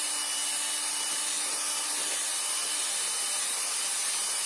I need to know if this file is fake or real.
real